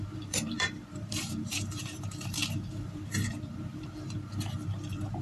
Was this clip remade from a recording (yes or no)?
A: yes